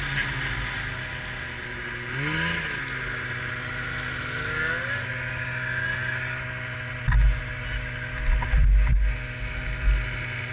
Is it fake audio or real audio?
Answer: real